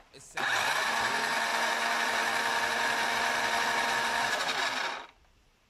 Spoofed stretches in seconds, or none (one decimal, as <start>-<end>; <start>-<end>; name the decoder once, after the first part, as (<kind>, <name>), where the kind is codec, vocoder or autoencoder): none